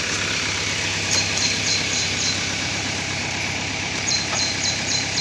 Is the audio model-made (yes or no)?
yes